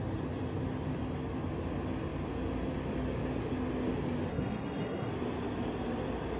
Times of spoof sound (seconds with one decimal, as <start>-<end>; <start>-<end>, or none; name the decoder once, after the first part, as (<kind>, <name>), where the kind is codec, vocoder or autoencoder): 4.3-5.1 (codec, SNAC)